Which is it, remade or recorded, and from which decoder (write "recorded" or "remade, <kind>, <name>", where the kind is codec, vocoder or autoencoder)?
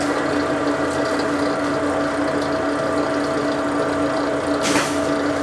recorded